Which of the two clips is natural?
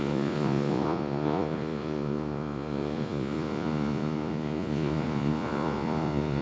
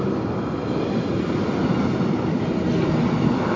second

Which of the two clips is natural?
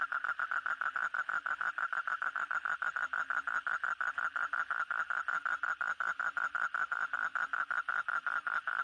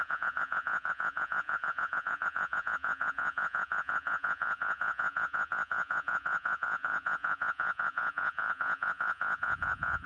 first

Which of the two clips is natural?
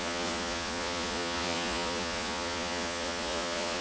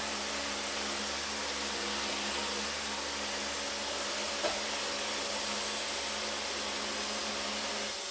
second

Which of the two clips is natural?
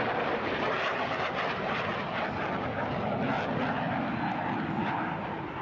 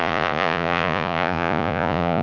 first